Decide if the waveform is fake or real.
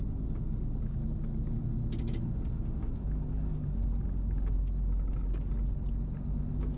real